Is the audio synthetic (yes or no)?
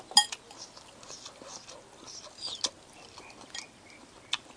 no